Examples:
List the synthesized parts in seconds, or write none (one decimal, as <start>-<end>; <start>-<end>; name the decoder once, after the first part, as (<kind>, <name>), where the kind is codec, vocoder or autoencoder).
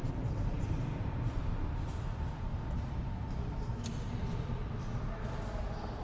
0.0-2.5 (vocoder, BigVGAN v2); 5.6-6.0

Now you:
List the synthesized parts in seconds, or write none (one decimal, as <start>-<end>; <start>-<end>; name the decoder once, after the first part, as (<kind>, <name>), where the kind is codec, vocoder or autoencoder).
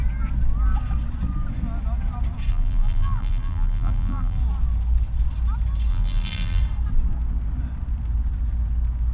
2.5-4.4 (vocoder, BigVGAN v2); 5.9-6.6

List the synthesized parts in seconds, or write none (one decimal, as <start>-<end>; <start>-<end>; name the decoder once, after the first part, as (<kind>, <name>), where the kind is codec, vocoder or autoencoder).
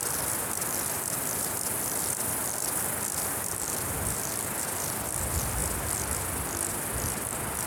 0.0-5.6 (vocoder, BigVGAN v2); 7.1-7.7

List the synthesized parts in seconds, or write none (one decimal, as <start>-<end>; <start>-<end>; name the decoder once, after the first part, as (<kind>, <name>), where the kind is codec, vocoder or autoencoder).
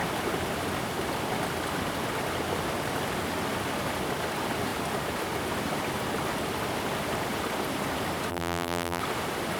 8.3-9.0 (vocoder, BigVGAN v2)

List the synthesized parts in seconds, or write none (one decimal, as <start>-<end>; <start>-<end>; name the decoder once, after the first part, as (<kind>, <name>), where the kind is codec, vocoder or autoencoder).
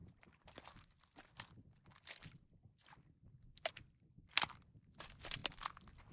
3.7-5.4 (vocoder, BigVGAN v2)